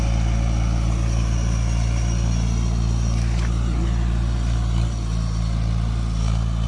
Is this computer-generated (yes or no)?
no